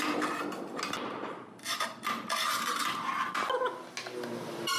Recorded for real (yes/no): yes